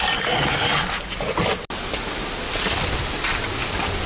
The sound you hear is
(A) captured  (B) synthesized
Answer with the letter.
A